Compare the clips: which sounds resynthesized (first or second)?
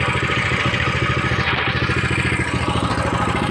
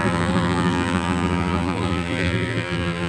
second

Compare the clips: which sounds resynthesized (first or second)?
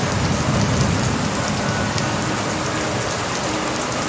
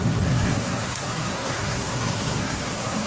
second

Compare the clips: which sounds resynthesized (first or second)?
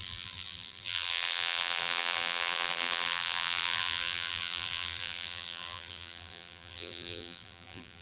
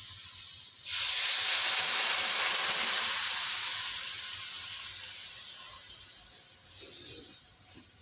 first